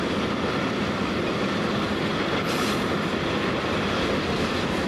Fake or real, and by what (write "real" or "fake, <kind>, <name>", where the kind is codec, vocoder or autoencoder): real